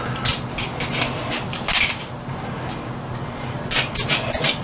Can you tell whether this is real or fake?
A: real